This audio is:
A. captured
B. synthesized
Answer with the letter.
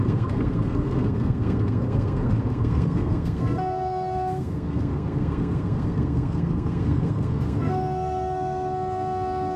B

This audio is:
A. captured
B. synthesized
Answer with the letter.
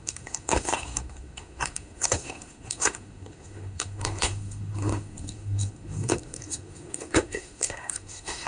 B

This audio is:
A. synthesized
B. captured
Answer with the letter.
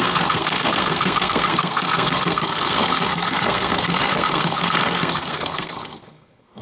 A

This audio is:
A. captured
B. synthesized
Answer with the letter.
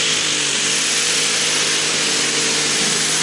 A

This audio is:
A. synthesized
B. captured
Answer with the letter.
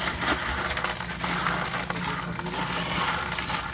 B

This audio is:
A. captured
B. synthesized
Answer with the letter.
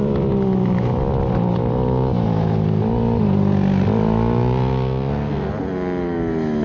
A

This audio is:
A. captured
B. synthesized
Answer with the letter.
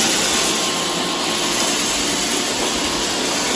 A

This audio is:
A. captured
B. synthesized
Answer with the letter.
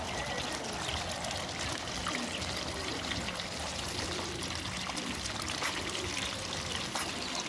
A